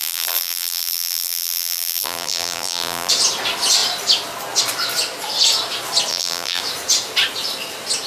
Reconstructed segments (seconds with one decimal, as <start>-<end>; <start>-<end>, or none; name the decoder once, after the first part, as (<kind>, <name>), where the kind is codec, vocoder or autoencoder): 0.0-3.1 (vocoder, BigVGAN v2); 6.1-6.6